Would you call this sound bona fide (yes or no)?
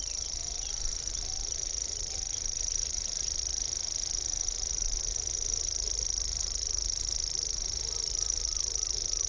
yes